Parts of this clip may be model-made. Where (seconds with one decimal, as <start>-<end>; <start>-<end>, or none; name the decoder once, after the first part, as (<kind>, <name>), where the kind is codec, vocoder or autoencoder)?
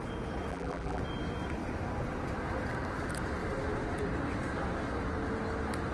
0.5-1.0 (vocoder, BigVGAN v2)